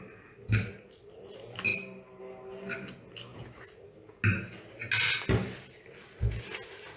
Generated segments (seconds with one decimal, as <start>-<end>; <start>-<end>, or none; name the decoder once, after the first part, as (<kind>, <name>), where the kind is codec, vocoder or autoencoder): none